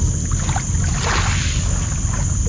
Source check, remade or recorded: recorded